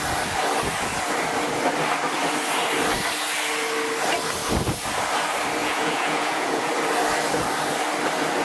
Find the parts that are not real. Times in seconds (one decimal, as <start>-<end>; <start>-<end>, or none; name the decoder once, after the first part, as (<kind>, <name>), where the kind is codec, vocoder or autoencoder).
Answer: 5.6-6.7 (vocoder, Vocos)